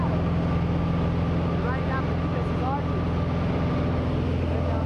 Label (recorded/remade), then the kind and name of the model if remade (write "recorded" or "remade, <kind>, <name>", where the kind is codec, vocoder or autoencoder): recorded